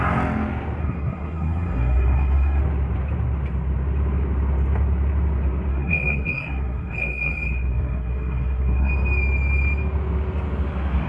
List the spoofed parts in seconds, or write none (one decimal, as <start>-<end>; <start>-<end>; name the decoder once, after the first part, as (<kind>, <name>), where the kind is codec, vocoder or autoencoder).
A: 0.8-2.6 (codec, SNAC); 5.7-8.9